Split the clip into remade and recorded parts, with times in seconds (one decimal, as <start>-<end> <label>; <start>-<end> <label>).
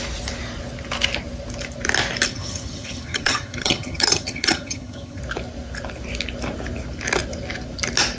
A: 0.0-2.3 recorded; 2.3-5.2 remade; 5.2-8.2 recorded